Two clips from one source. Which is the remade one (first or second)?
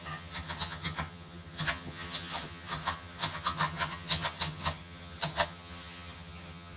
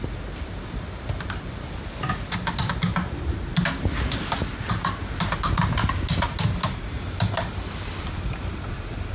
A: first